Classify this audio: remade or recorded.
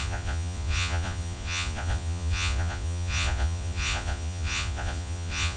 remade